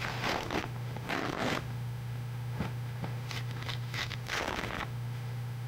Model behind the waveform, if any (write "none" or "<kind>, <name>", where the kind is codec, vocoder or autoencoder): autoencoder, DAC-VAE